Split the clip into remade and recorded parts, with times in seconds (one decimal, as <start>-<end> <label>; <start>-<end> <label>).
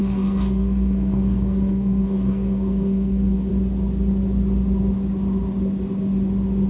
0.0-3.5 remade; 3.5-6.7 recorded